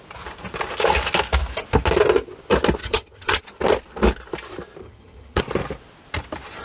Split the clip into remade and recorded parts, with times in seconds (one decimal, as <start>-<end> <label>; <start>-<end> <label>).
0.0-2.8 recorded; 2.8-3.4 remade; 3.4-4.8 recorded; 4.8-5.4 remade; 5.4-6.6 recorded